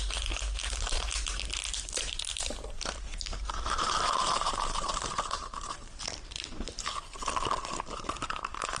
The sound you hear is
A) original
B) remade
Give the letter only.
B